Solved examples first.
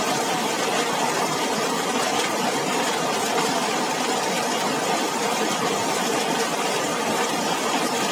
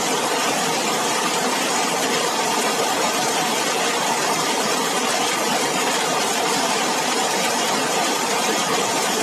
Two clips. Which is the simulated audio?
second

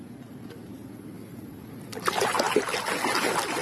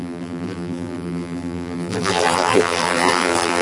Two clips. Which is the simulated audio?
second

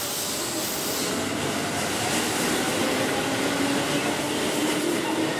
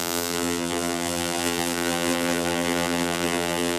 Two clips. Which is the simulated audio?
second